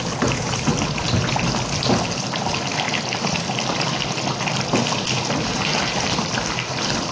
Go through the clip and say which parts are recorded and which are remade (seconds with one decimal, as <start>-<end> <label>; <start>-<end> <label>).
0.0-7.1 recorded